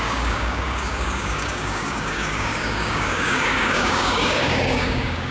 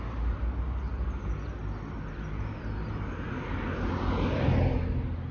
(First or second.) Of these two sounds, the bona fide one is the second